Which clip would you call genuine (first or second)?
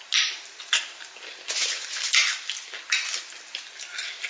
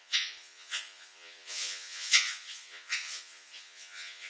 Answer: first